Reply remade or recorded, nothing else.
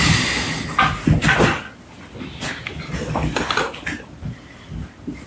recorded